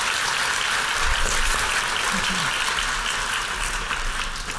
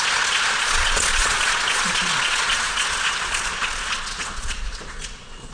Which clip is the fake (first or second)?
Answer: second